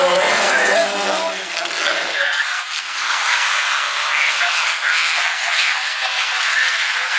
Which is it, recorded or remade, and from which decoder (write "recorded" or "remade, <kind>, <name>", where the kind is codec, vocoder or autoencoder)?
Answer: remade, codec, SNAC